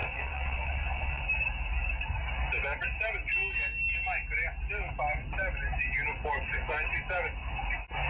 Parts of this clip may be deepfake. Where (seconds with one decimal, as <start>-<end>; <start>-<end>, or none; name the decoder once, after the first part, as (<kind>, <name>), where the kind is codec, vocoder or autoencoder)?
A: 0.0-1.2 (vocoder, WaveNeXt)